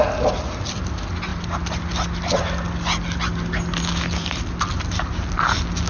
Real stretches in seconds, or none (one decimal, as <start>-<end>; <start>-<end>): 0.0-5.9